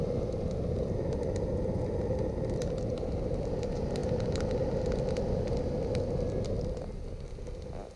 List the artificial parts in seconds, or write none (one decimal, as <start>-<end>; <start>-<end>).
none